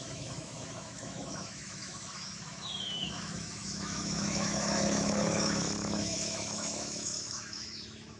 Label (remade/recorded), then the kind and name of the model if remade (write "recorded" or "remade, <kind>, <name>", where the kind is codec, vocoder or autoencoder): remade, autoencoder, DAC-VAE